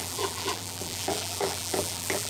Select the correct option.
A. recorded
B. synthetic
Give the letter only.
B